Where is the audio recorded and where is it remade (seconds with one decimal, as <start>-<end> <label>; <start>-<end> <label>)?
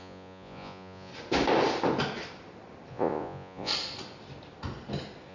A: 0.0-1.1 remade; 1.1-2.9 recorded; 2.9-3.7 remade; 3.7-5.3 recorded